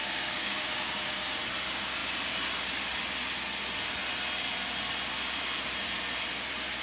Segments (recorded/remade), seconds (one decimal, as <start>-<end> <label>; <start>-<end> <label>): 0.0-0.9 remade; 0.9-6.8 recorded

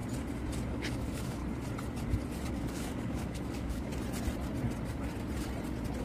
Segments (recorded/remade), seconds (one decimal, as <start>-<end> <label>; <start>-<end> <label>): 0.0-0.7 recorded; 0.7-1.4 remade; 1.4-2.5 recorded; 2.5-3.9 remade; 3.9-6.0 recorded

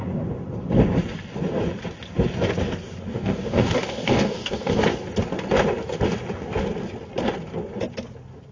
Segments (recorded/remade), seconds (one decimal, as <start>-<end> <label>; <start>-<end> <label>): 0.0-3.1 recorded; 3.1-4.7 remade; 4.7-8.5 recorded

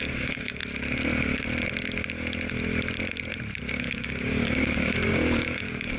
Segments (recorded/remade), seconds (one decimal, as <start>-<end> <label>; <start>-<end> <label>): 0.0-0.6 remade; 0.6-3.7 recorded; 3.7-6.0 remade

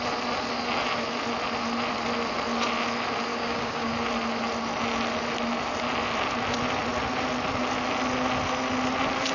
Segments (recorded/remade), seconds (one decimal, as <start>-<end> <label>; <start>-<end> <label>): 0.0-3.3 recorded; 3.3-3.9 remade; 3.9-9.3 recorded